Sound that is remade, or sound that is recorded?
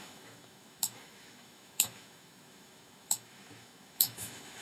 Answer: remade